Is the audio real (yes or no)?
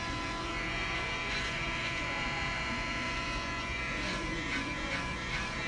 no